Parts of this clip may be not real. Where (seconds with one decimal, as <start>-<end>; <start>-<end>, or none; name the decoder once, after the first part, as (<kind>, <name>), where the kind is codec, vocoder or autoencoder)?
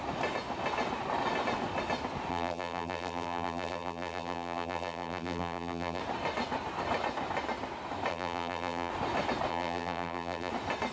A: 2.3-6.0 (vocoder, BigVGAN v2); 8.1-8.9; 9.5-10.5